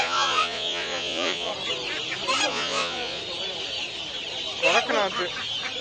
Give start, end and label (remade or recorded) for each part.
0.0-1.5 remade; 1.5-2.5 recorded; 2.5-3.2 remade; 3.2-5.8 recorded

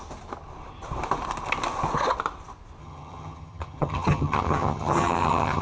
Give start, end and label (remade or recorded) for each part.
0.0-2.8 recorded; 2.8-5.6 remade